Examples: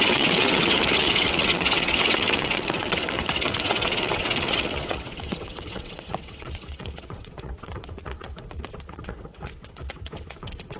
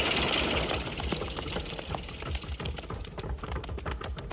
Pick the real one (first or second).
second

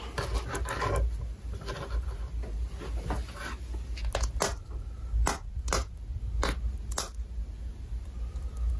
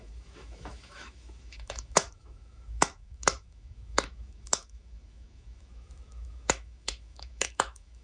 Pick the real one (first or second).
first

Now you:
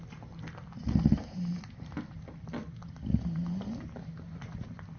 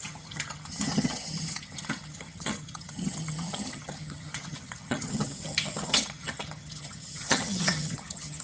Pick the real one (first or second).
first